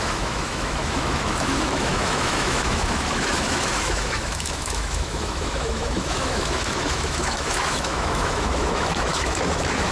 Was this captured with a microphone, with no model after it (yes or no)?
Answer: no